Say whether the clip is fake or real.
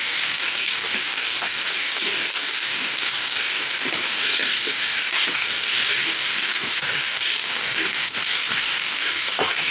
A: fake